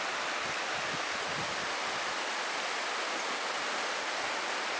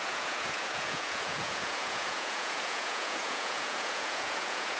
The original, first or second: first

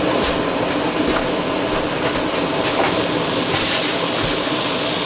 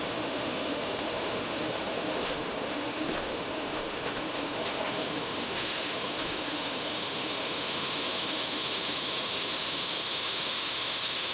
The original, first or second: first